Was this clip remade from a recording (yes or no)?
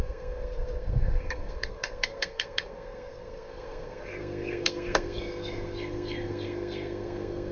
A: yes